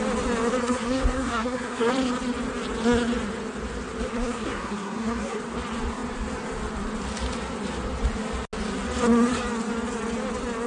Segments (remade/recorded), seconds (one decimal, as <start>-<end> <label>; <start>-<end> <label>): 0.0-0.6 recorded; 0.6-1.9 remade; 1.9-4.1 recorded; 4.1-5.4 remade; 5.4-10.7 recorded